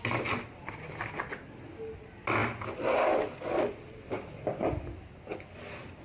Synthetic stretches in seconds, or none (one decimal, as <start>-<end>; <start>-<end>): none